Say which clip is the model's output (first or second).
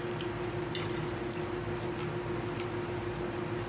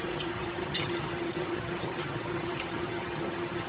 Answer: second